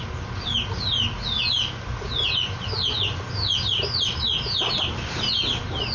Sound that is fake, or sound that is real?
real